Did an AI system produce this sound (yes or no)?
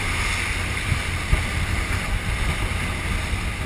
no